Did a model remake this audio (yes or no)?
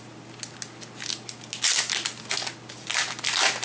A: no